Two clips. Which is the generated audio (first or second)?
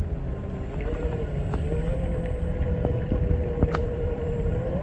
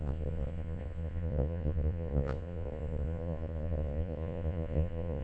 second